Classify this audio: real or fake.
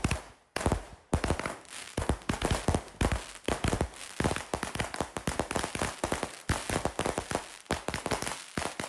real